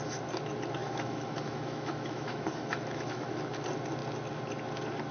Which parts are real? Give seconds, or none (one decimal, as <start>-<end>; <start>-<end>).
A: 0.0-0.8; 3.3-5.1